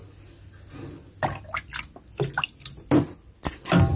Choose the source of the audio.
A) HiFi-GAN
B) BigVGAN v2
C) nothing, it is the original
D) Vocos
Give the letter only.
C